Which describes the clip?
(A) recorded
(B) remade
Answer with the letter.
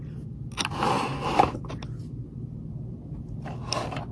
A